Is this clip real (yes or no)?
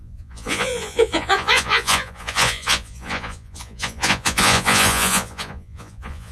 no